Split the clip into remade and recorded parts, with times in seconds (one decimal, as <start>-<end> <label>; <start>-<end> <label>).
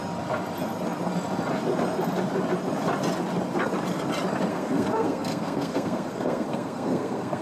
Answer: 0.0-4.5 recorded; 4.5-7.4 remade